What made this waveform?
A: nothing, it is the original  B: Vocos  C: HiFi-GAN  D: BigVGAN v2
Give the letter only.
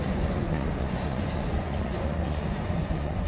B